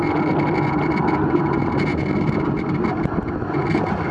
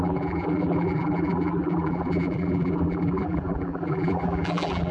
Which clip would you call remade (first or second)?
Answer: second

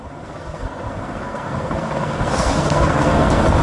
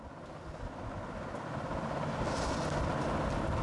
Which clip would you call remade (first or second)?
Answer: first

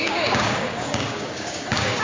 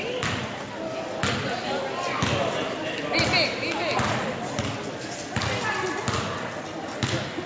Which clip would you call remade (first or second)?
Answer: first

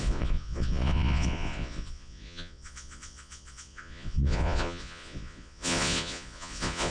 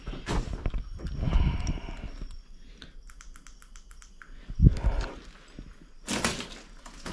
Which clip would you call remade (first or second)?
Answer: first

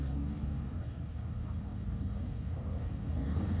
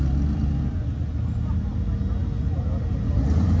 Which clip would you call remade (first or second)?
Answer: first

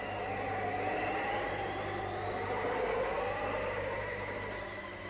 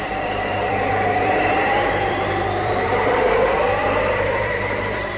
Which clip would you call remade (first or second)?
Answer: second